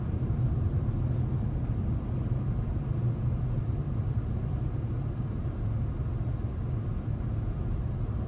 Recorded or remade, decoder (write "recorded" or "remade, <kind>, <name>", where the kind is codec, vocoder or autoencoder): recorded